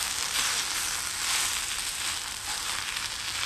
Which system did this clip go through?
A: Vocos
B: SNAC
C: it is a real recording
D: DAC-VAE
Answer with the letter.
C